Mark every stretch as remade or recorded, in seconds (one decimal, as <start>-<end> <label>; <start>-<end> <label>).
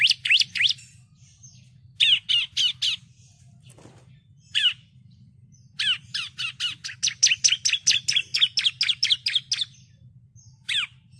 0.0-11.2 recorded